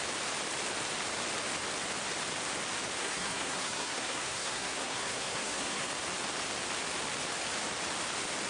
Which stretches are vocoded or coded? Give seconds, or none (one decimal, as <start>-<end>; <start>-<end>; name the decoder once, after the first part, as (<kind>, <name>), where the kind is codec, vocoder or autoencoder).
3.0-5.9 (codec, SNAC)